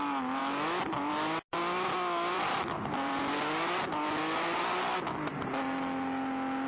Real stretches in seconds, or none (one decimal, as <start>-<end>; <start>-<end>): 0.0-1.6; 3.3-6.7